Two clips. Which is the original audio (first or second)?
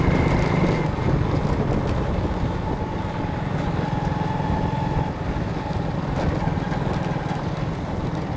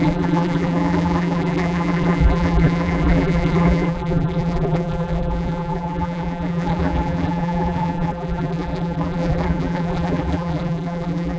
first